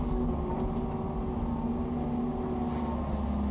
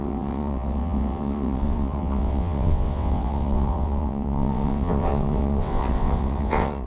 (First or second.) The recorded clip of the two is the first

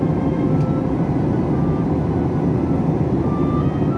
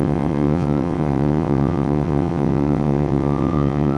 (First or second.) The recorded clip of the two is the first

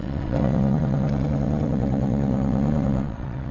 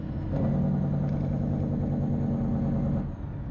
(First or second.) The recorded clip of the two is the second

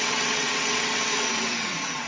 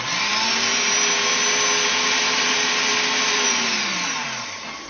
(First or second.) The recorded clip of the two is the second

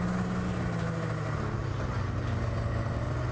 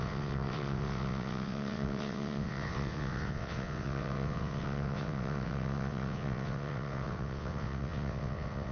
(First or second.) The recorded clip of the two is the first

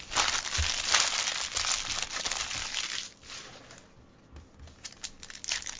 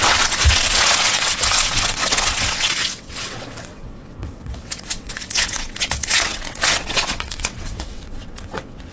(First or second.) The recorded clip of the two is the first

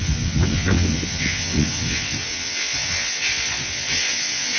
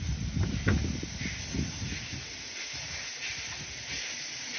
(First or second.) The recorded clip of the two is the second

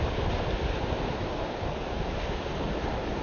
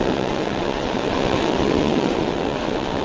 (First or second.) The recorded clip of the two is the first